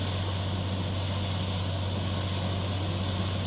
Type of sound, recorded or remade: recorded